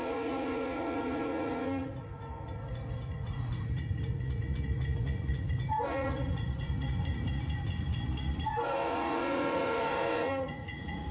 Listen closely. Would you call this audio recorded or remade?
remade